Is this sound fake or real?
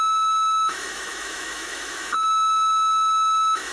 fake